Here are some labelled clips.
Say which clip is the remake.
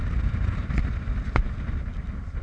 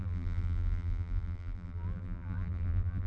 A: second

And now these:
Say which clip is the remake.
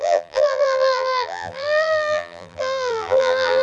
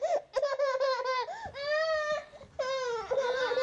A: first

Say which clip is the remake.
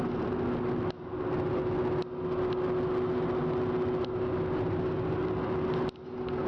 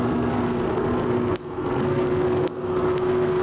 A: second